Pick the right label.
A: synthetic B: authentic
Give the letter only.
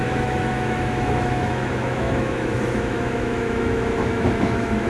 A